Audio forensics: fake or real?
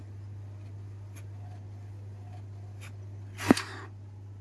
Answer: real